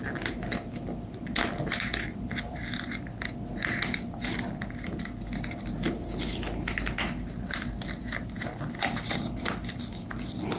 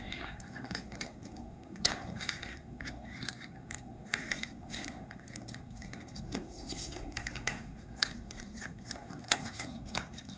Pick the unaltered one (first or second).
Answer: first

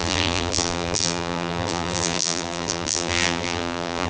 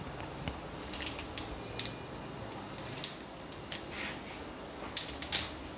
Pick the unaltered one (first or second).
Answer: second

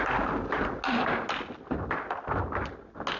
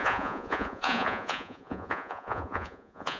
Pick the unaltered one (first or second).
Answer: first